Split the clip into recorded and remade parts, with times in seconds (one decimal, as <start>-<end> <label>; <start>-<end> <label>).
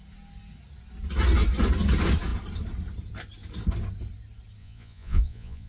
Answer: 0.0-4.6 recorded; 4.6-5.7 remade